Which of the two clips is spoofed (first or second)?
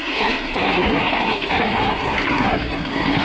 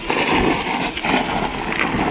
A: first